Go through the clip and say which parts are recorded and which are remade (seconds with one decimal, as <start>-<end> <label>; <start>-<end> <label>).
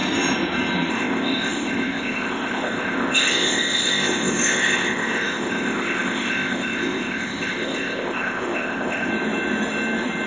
0.0-0.9 recorded; 0.9-9.1 remade; 9.1-10.3 recorded